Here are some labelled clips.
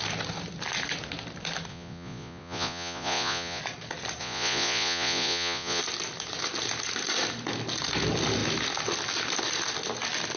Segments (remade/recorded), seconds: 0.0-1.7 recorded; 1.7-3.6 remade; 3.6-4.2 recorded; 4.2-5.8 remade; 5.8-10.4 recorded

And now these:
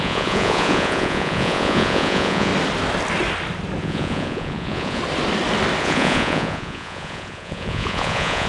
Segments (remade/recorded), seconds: 0.0-2.5 remade; 2.5-3.8 recorded; 3.8-5.0 remade; 5.0-5.8 recorded; 5.8-8.5 remade